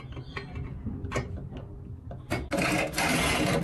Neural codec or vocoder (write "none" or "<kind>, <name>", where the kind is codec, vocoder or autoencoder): none